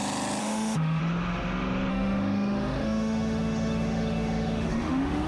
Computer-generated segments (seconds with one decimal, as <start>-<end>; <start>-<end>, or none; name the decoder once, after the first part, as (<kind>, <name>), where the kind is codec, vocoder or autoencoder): 0.4-1.0 (autoencoder, DAC-VAE); 1.9-5.3